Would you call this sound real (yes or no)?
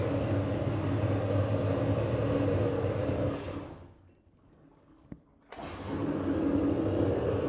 yes